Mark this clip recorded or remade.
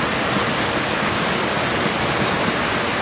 recorded